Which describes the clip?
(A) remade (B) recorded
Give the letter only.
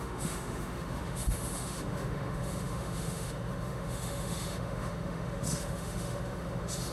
A